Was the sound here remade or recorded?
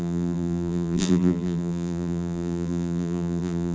remade